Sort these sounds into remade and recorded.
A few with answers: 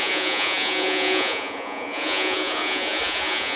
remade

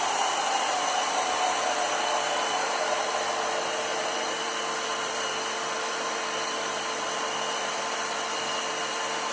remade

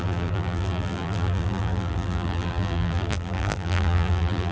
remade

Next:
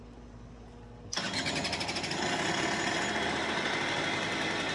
recorded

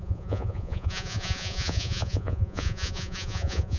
remade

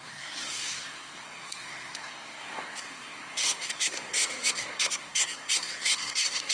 remade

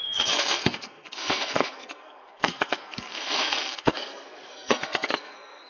remade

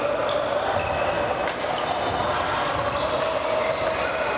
recorded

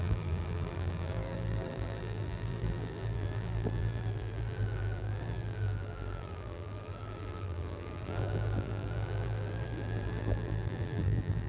remade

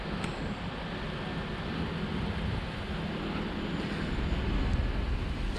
recorded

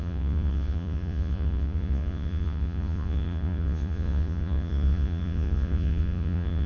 remade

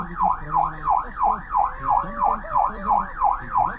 remade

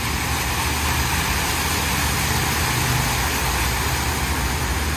recorded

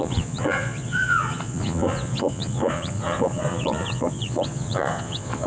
remade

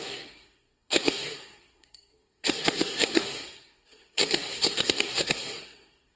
remade